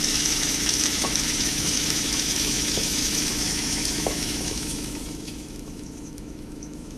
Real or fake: fake